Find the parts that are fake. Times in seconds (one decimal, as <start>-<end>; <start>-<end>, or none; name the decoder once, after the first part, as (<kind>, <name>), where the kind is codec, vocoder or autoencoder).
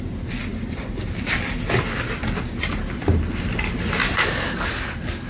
4.2-5.3 (codec, DAC)